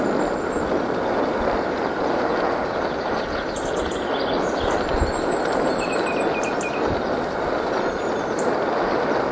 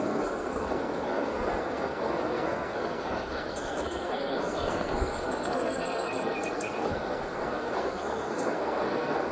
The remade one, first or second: second